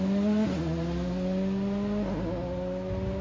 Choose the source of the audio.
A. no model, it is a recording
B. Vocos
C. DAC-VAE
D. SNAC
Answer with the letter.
A